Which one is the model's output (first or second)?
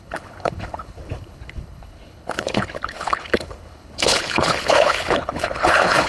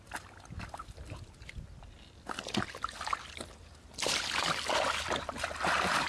first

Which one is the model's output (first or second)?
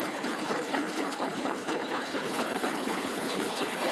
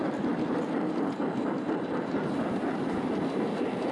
first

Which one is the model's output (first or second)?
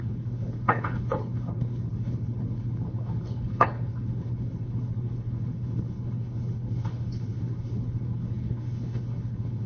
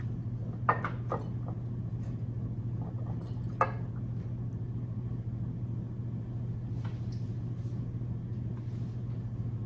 first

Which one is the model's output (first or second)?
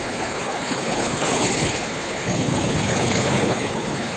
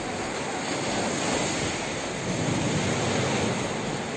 first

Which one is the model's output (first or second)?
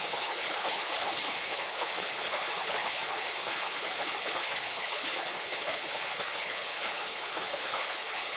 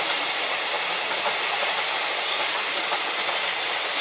first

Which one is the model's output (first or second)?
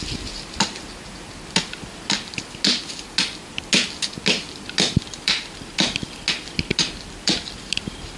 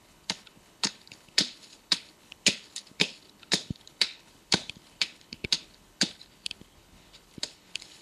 second